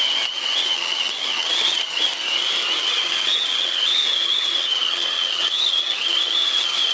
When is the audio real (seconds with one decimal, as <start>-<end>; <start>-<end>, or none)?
2.1-2.8